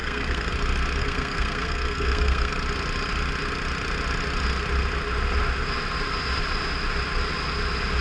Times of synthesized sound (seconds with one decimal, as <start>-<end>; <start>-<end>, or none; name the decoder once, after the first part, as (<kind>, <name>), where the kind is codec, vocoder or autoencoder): 0.0-0.5 (codec, SNAC); 1.0-2.5